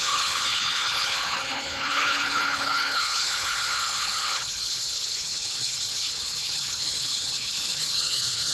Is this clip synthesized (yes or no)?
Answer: yes